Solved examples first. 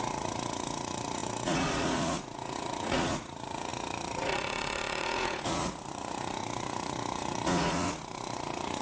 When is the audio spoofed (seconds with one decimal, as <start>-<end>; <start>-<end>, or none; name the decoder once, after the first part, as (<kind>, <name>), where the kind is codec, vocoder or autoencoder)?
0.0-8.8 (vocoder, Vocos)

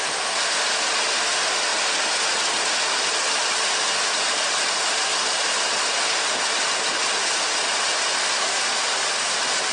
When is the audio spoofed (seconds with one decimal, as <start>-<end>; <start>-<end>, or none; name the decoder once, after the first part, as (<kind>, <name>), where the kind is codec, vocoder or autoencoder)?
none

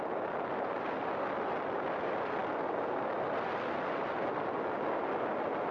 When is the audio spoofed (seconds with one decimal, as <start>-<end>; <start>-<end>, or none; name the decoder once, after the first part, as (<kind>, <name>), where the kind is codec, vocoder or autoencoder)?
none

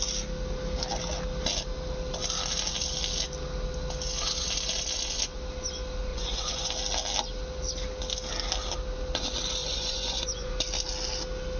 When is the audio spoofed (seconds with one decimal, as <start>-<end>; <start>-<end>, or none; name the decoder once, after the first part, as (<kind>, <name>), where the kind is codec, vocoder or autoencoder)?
6.1-6.7 (vocoder, Vocos); 9.6-10.5

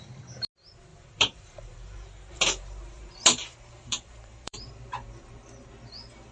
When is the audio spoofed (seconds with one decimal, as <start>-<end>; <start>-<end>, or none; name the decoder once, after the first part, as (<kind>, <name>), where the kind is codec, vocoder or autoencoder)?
0.9-4.7 (vocoder, BigVGAN v2)